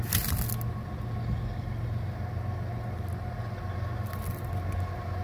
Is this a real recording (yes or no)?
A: yes